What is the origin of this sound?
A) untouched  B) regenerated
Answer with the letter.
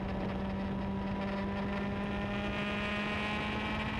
A